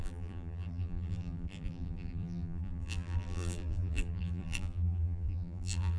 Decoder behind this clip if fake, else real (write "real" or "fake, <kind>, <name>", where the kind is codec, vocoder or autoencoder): fake, vocoder, BigVGAN v2